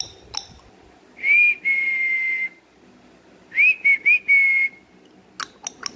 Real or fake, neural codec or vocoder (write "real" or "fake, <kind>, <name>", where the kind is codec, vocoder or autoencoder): real